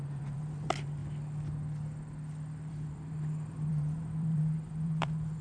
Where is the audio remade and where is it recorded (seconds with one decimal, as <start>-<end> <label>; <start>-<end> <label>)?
0.0-1.0 remade; 1.0-2.7 recorded; 2.7-5.4 remade